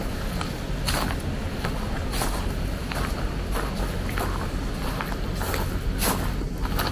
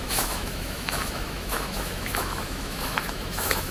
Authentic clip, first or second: first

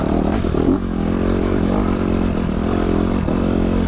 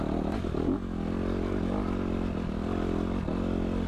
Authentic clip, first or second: second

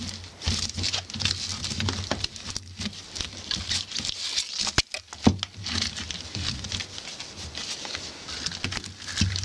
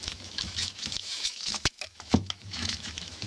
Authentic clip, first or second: first